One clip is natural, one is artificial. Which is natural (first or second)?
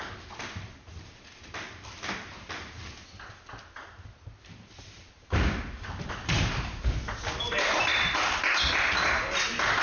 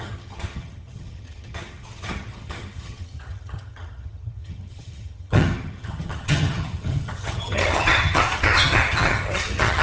first